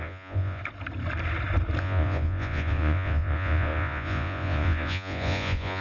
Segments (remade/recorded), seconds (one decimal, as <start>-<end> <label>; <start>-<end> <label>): 0.0-0.6 remade; 0.6-1.8 recorded; 1.8-5.8 remade